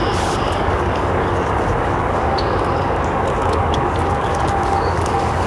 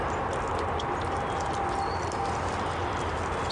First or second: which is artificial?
first